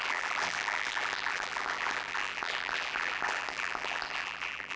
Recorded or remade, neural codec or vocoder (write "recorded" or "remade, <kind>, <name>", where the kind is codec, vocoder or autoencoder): remade, vocoder, BigVGAN v2